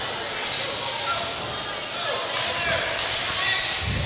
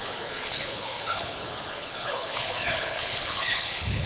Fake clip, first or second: second